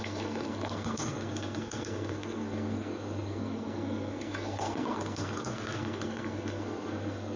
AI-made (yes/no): yes